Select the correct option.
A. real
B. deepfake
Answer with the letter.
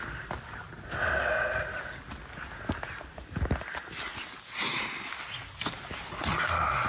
A